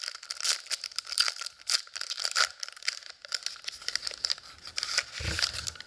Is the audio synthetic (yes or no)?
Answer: no